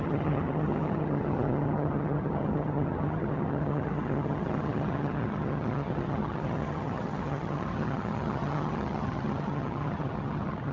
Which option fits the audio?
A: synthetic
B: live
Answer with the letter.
A